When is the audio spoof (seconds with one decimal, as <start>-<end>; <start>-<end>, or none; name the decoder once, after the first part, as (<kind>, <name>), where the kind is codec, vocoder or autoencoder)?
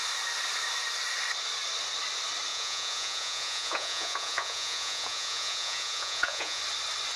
2.5-6.6 (vocoder, Vocos)